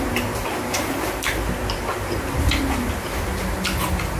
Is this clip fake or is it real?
real